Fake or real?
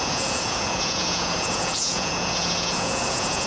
fake